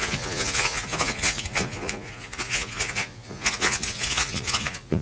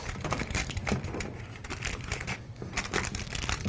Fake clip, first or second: first